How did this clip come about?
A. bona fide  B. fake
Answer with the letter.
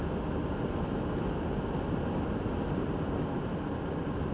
A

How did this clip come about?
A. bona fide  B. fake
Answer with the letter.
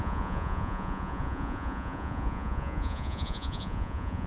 B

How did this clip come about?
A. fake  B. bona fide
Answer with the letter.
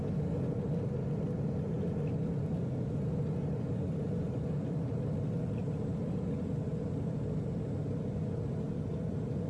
B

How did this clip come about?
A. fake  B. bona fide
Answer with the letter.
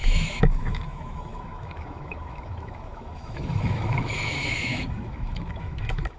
A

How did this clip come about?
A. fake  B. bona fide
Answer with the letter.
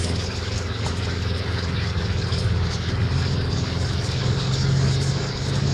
A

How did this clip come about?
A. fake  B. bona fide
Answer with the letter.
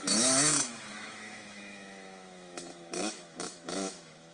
A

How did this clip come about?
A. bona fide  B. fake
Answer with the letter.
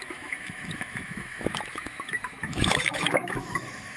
B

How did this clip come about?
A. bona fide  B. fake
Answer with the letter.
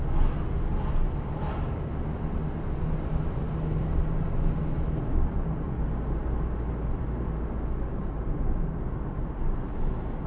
A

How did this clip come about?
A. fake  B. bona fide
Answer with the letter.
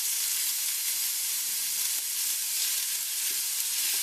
B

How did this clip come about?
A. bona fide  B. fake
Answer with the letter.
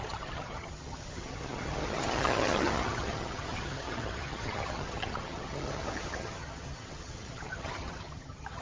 B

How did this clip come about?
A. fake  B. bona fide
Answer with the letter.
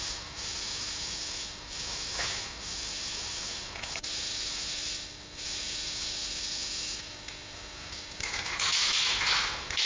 A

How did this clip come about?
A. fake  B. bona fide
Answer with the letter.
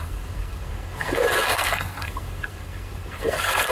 A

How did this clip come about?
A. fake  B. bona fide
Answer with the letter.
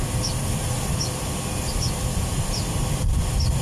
B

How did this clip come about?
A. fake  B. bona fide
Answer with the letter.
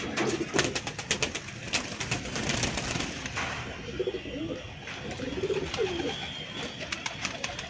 B